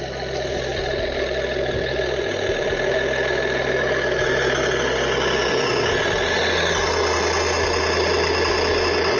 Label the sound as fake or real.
real